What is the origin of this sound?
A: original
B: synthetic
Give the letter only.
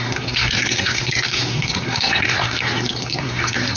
B